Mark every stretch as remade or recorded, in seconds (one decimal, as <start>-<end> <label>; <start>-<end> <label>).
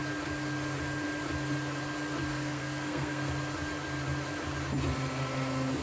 0.0-2.3 recorded; 2.3-3.3 remade; 3.3-5.8 recorded